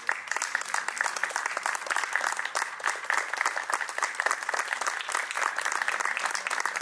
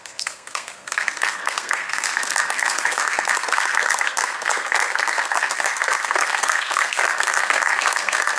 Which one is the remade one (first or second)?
second